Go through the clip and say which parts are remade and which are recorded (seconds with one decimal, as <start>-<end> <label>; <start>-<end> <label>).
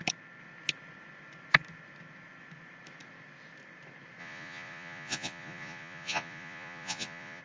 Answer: 0.0-4.2 recorded; 4.2-7.4 remade